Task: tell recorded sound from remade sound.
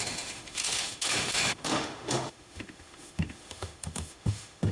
remade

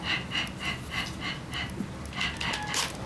recorded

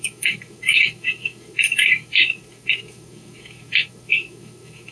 remade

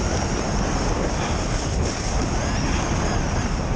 recorded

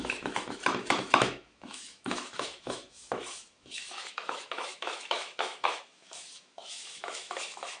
remade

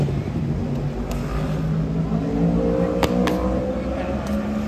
recorded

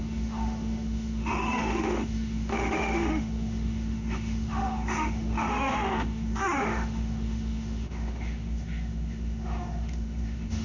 remade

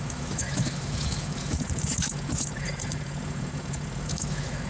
remade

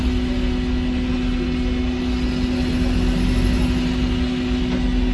recorded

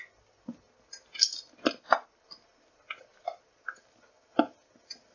recorded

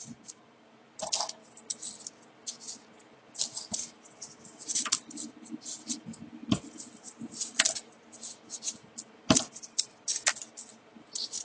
recorded